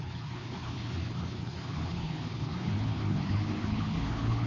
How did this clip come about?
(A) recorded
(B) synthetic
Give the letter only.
B